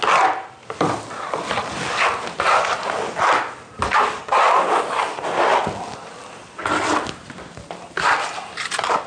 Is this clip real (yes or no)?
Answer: yes